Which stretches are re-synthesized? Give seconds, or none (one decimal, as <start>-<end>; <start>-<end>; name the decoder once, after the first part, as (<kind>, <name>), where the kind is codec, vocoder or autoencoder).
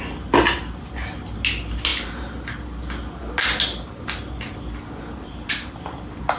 none